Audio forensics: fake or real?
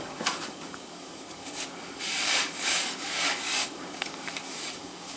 fake